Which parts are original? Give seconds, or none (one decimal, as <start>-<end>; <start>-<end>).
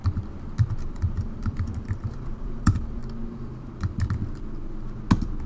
0.0-0.9; 3.0-5.5